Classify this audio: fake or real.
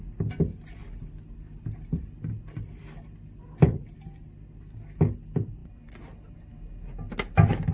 real